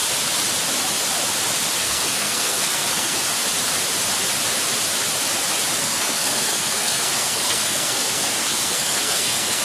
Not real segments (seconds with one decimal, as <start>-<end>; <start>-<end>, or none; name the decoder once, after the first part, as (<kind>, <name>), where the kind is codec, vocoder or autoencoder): 1.8-3.2 (codec, SNAC); 5.8-9.6